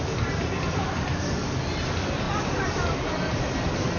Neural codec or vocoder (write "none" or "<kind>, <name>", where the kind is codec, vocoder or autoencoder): none